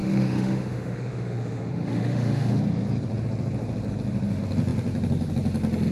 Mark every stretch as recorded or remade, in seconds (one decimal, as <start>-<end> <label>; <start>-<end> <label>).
0.0-2.6 remade; 2.6-5.9 recorded